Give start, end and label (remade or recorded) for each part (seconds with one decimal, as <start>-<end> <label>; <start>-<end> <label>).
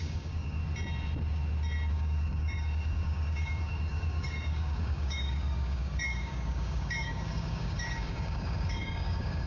0.0-0.6 remade; 0.6-1.9 recorded; 1.9-9.5 remade